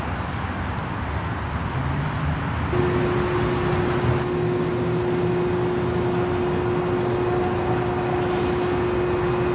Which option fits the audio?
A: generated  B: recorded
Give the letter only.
B